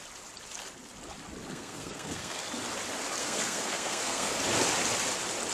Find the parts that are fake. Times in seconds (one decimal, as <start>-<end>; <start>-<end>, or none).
1.5-2.4; 3.2-4.4